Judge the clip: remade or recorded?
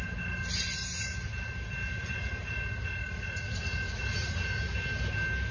recorded